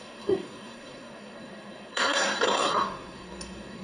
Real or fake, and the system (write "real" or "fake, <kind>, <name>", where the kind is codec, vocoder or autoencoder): fake, codec, SNAC